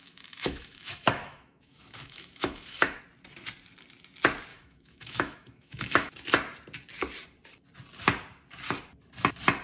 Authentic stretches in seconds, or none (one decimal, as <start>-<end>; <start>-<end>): 3.0-4.5; 6.2-9.6